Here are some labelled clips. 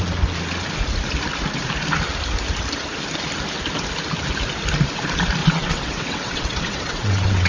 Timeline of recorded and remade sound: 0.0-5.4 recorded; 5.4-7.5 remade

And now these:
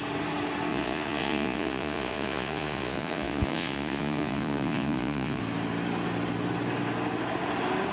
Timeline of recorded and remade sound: 0.0-0.7 recorded; 0.7-5.4 remade; 5.4-7.9 recorded

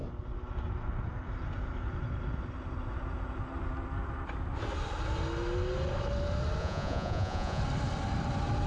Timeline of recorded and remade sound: 0.0-6.6 recorded; 6.6-7.6 remade; 7.6-8.7 recorded

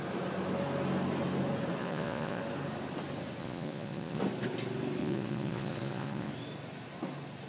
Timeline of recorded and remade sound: 0.0-1.8 recorded; 1.8-2.4 remade; 2.4-3.4 recorded; 3.4-4.2 remade; 4.2-5.0 recorded; 5.0-6.3 remade; 6.3-7.5 recorded

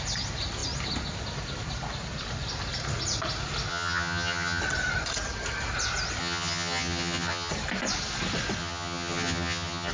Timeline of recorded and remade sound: 0.0-3.7 recorded; 3.7-4.6 remade; 4.6-6.2 recorded; 6.2-7.5 remade; 7.5-8.6 recorded; 8.6-9.9 remade

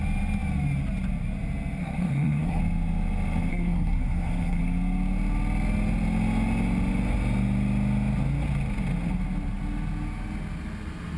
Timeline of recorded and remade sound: 0.0-1.8 recorded; 1.8-2.6 remade; 2.6-3.5 recorded; 3.5-4.6 remade; 4.6-11.2 recorded